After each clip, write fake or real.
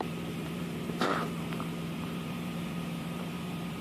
fake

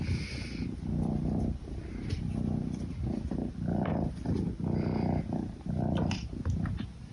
fake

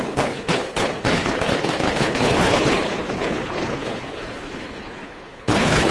fake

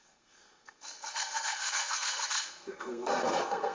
fake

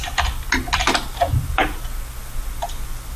real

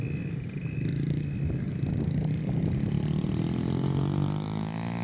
real